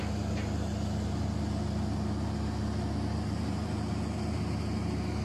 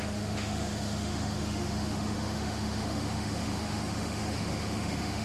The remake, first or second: second